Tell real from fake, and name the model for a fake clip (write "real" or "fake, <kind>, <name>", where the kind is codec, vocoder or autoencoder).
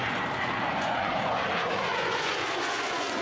fake, vocoder, Vocos